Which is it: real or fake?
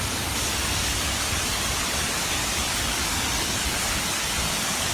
fake